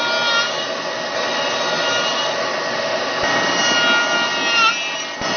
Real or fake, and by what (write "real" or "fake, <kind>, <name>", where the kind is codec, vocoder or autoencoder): real